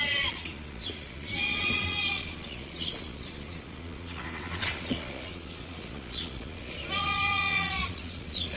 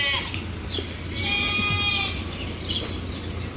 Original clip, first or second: second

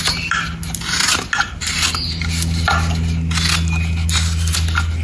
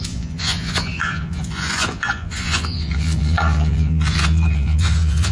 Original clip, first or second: first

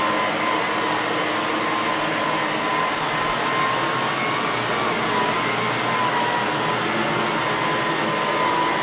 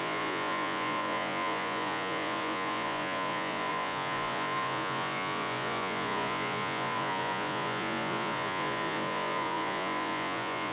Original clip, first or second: first